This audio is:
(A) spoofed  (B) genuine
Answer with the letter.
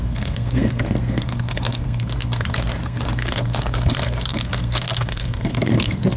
A